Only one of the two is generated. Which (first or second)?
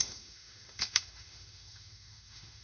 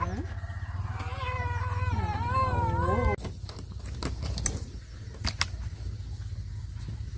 first